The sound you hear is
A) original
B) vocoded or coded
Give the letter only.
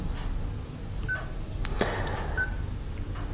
A